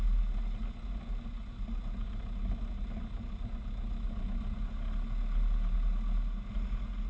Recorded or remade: recorded